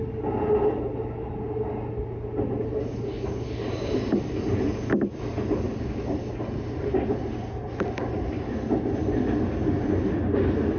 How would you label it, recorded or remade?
recorded